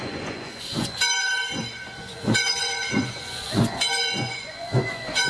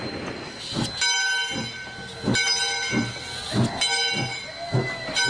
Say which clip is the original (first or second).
second